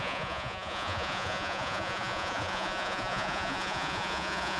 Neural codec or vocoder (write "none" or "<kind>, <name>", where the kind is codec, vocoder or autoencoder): vocoder, Vocos